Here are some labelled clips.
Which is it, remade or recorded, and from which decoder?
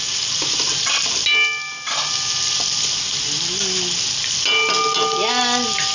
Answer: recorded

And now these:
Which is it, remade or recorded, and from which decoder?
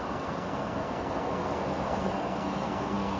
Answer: remade, codec, SNAC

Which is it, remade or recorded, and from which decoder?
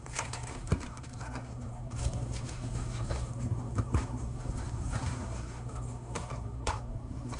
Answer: remade, codec, SNAC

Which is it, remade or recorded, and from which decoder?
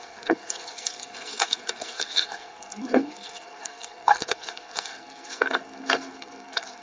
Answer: remade, codec, SNAC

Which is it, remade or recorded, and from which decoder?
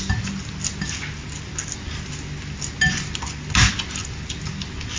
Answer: recorded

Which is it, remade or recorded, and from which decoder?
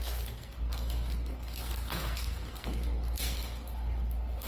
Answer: remade, codec, SNAC